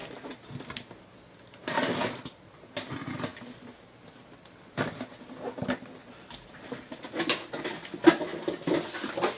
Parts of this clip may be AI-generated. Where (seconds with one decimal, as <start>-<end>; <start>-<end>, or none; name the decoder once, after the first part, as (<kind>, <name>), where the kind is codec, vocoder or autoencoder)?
none